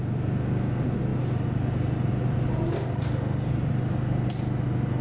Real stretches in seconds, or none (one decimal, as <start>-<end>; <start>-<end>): 0.0-5.0